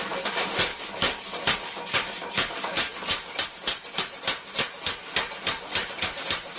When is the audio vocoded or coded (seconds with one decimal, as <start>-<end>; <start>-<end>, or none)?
0.7-3.6